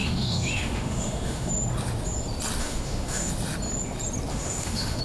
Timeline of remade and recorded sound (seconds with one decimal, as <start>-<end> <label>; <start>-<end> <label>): 0.0-1.5 remade; 1.5-2.6 recorded; 2.6-3.3 remade; 3.3-4.3 recorded; 4.3-5.0 remade

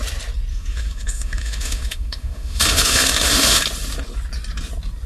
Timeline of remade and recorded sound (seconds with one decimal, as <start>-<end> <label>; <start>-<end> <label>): 0.0-0.5 recorded; 0.5-3.6 remade; 3.6-5.1 recorded

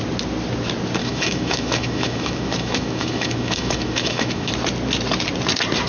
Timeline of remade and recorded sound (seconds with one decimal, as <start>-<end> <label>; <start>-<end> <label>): 0.0-1.0 recorded; 1.0-4.5 remade; 4.5-5.9 recorded

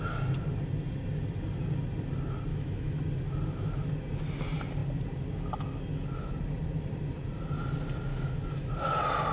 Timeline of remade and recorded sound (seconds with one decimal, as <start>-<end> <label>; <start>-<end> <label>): 0.0-2.5 recorded; 2.5-3.0 remade; 3.0-8.1 recorded; 8.1-8.7 remade; 8.7-9.3 recorded

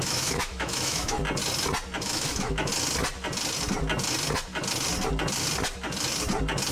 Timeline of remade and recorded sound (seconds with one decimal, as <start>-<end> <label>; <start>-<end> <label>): 0.0-1.2 remade; 1.2-2.0 recorded; 2.0-2.7 remade; 2.7-6.7 recorded

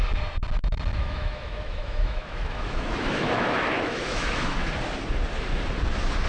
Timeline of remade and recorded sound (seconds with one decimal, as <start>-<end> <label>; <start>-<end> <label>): 0.0-0.9 recorded; 0.9-4.7 remade; 4.7-6.3 recorded